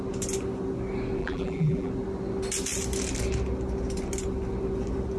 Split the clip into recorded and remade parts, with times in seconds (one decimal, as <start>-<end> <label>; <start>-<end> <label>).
0.0-1.2 recorded; 1.2-1.9 remade; 1.9-5.2 recorded